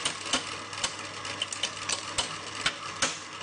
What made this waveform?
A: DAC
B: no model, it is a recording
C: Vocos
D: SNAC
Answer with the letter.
B